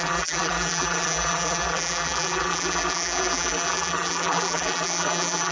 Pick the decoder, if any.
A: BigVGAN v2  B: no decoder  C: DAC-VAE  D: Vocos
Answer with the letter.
A